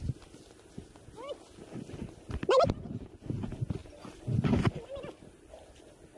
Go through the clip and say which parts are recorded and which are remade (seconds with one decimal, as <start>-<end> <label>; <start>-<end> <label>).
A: 0.0-6.2 recorded